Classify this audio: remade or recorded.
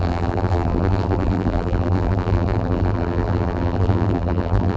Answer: remade